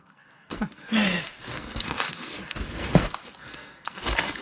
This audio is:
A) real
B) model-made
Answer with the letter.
B